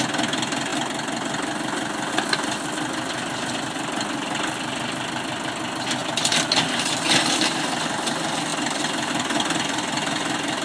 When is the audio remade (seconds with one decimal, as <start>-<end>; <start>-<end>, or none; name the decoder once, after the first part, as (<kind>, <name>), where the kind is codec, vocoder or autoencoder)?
none